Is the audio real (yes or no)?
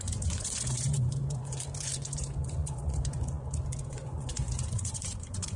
no